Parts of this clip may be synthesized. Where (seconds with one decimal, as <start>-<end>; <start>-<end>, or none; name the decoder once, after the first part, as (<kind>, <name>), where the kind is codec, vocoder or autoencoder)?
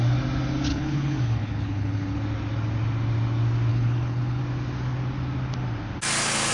0.7-2.2 (codec, HILCodec); 3.7-4.4